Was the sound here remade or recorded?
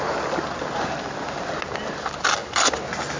recorded